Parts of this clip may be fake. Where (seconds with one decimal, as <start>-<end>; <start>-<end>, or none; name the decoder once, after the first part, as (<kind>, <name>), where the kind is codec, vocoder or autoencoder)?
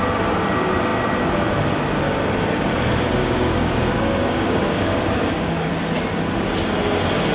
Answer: 3.2-5.7 (codec, DAC)